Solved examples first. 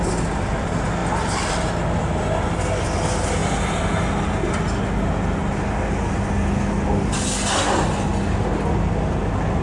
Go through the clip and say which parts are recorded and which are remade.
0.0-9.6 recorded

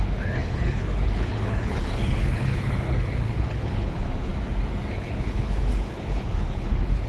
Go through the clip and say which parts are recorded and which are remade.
0.0-4.3 remade; 4.3-4.9 recorded; 4.9-7.1 remade

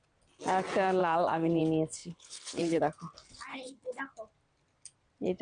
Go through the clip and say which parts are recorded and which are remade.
0.0-1.0 recorded; 1.0-1.6 remade; 1.6-2.0 recorded; 2.0-2.8 remade; 2.8-3.5 recorded; 3.5-4.0 remade; 4.0-5.4 recorded

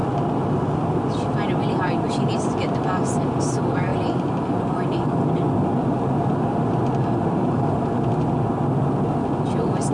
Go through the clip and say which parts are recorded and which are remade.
0.0-9.9 recorded